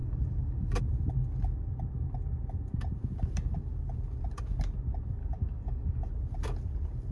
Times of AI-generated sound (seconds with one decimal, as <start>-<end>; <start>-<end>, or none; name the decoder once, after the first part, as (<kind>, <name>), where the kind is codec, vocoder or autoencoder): 0.0-0.8 (codec, DAC); 5.2-6.1